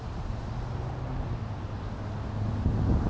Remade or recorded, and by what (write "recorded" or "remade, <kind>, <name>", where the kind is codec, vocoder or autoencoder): recorded